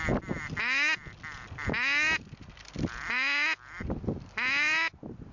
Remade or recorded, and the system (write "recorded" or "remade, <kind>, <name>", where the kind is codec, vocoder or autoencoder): recorded